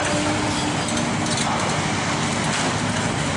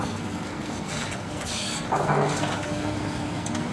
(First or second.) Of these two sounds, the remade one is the second